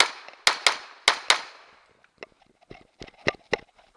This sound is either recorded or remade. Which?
recorded